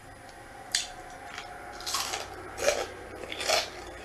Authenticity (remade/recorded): recorded